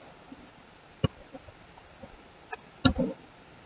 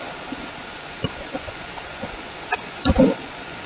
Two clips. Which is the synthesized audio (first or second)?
second